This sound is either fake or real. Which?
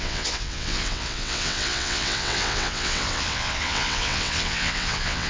fake